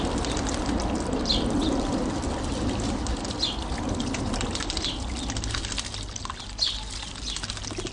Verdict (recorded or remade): recorded